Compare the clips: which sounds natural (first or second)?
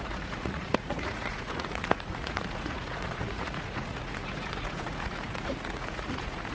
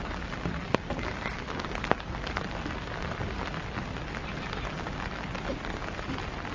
second